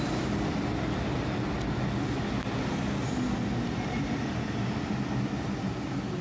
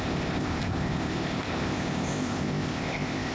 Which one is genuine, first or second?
first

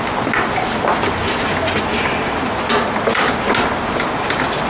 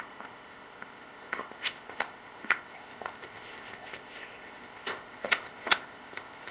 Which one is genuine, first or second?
first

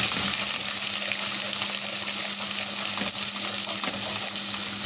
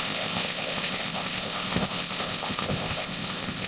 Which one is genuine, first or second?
first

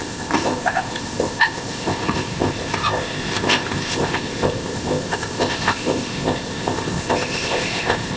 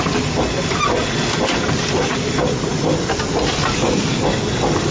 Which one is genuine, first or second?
second